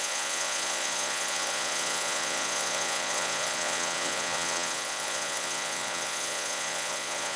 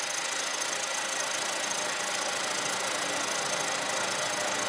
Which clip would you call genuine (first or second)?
second